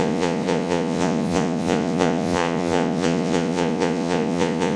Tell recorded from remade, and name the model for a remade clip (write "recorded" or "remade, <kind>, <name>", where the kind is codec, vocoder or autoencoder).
remade, vocoder, Vocos